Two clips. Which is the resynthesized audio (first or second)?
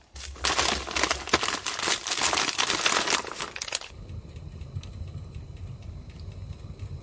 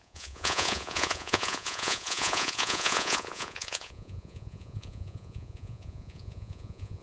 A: second